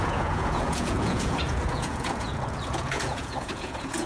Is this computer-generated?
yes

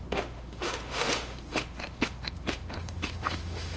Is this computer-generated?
yes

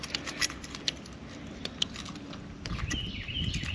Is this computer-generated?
no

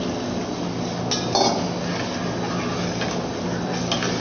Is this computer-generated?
no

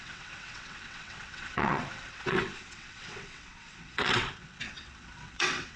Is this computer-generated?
yes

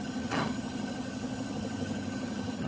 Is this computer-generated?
yes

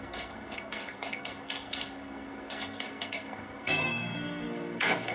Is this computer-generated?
yes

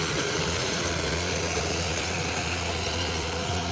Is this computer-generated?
yes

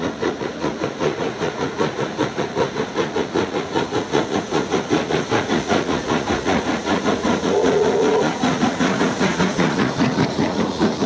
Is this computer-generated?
yes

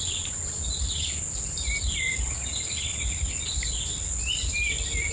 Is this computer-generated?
no